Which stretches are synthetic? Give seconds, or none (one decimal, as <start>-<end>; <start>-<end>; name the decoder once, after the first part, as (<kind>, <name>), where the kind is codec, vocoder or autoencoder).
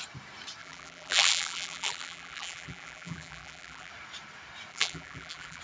0.6-3.9 (vocoder, BigVGAN v2); 4.7-5.6